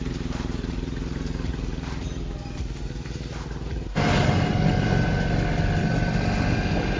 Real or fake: real